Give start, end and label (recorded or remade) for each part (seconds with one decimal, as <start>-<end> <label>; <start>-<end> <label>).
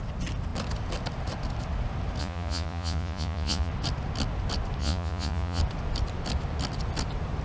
0.0-2.2 recorded; 2.2-3.7 remade; 3.7-4.8 recorded; 4.8-5.6 remade; 5.6-7.4 recorded